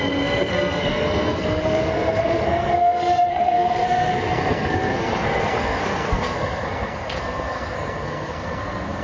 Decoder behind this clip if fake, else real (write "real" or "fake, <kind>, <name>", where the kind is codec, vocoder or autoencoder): fake, codec, SNAC